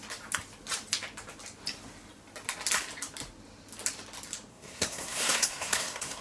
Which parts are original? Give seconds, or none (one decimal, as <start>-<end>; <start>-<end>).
0.0-4.5